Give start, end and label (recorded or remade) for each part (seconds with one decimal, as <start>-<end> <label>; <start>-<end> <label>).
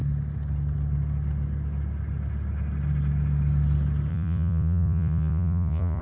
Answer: 0.0-4.1 recorded; 4.1-6.0 remade